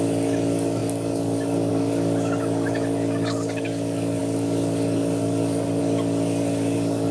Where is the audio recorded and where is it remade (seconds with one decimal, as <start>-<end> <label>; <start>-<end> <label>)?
0.0-7.1 remade

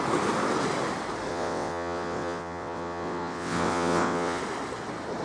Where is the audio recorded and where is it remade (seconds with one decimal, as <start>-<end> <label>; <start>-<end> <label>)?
0.0-1.3 recorded; 1.3-4.4 remade; 4.4-5.2 recorded

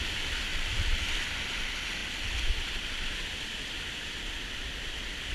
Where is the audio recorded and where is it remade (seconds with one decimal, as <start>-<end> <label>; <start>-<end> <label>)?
0.0-0.5 recorded; 0.5-1.1 remade; 1.1-2.0 recorded; 2.0-4.2 remade; 4.2-5.3 recorded

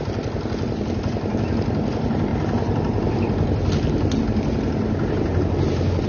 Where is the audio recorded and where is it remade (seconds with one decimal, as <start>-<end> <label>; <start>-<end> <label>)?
0.0-6.1 recorded

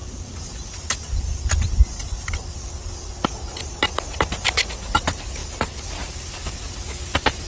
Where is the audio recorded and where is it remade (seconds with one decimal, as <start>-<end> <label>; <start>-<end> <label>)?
0.0-7.5 recorded

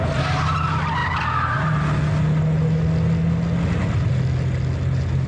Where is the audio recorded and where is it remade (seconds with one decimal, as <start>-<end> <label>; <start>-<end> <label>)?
0.0-5.3 recorded